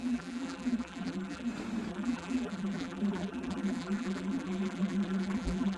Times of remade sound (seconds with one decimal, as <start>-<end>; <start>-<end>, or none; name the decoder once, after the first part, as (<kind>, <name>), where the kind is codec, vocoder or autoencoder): 0.0-1.5 (vocoder, BigVGAN v2); 1.9-5.8